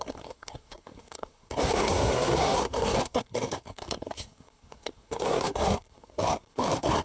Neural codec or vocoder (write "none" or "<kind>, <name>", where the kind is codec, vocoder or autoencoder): codec, SNAC